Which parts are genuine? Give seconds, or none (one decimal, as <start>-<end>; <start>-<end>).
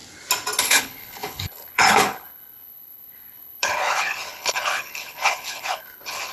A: 0.0-0.6